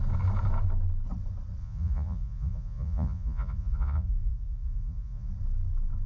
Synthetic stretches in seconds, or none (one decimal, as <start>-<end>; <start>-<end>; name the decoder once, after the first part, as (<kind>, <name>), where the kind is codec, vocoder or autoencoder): 1.6-5.3 (vocoder, Vocos)